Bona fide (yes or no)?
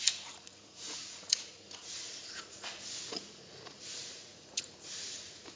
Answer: no